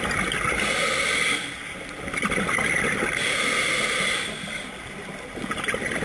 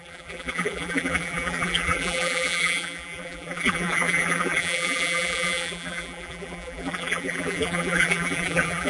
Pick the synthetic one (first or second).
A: second